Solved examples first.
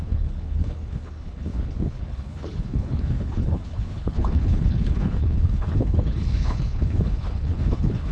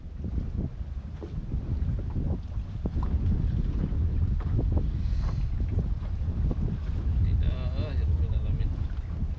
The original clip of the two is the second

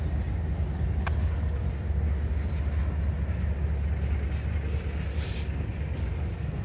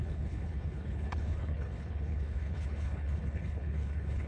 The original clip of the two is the first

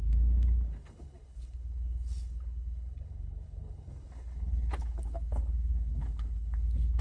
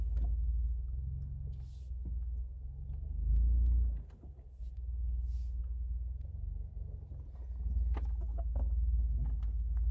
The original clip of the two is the second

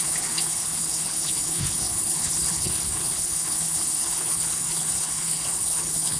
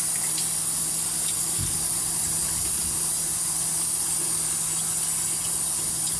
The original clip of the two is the second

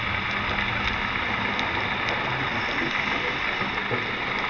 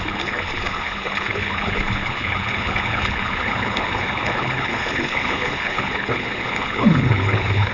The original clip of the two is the first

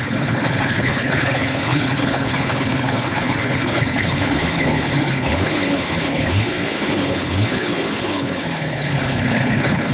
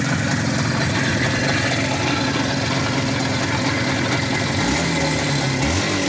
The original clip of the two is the second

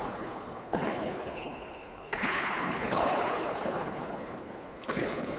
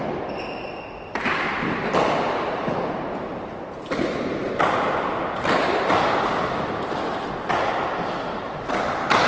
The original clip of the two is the second